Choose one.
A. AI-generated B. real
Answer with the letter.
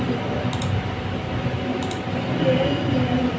B